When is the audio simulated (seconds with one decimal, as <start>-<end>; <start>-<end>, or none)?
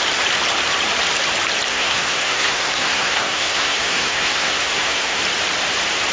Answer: 1.7-5.2